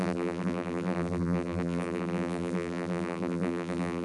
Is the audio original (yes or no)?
no